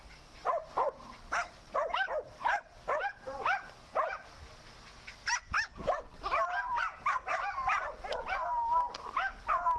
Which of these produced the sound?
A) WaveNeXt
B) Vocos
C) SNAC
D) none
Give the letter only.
D